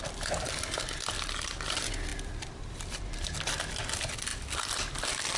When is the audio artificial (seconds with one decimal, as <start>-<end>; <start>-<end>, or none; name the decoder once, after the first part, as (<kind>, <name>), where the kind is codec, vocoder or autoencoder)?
2.1-3.7 (vocoder, BigVGAN v2); 4.3-5.4